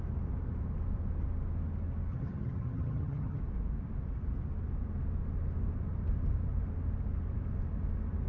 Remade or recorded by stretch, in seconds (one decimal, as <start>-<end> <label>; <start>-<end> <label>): 0.0-2.1 recorded; 2.1-3.4 remade; 3.4-8.3 recorded